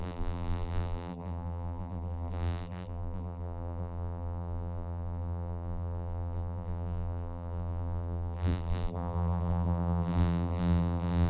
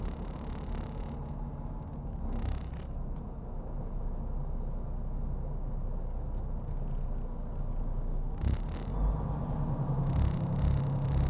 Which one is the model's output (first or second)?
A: first